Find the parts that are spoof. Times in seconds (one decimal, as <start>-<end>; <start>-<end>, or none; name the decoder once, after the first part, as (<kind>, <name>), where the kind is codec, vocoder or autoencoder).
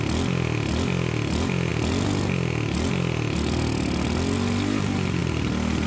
none